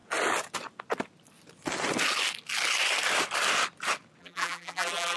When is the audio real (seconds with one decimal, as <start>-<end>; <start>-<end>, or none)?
0.0-4.2